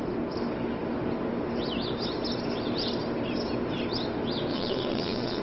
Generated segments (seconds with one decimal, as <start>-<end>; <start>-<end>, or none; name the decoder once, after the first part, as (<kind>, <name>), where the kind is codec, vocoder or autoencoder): 4.5-5.4 (vocoder, WaveNeXt)